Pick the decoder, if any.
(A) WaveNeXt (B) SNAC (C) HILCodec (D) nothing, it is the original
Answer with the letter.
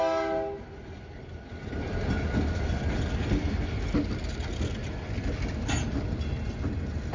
D